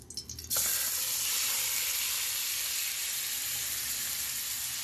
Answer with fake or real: real